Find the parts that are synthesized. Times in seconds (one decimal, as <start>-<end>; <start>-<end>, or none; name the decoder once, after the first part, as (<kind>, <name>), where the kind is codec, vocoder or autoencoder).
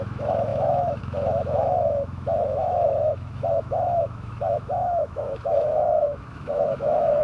0.0-7.2 (autoencoder, DAC-VAE)